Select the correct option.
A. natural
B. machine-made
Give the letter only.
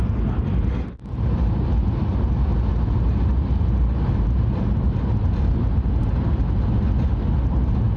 A